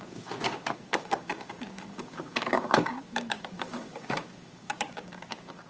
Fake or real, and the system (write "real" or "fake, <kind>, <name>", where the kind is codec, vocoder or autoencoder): fake, codec, DAC